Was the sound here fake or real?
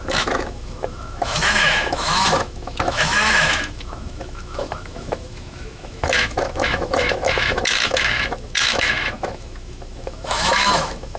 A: fake